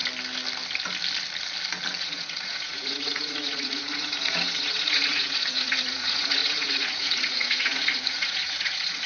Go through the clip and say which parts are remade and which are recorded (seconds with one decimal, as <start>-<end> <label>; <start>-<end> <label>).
0.0-2.0 recorded; 2.0-9.1 remade